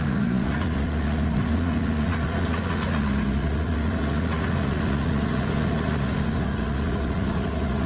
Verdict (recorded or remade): remade